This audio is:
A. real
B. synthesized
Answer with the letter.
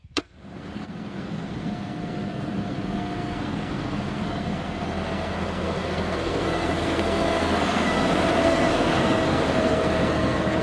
B